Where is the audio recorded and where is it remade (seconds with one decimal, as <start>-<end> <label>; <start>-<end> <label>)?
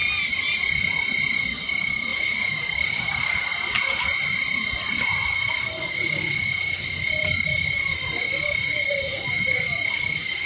0.0-1.3 recorded; 1.3-3.5 remade; 3.5-5.3 recorded; 5.3-10.5 remade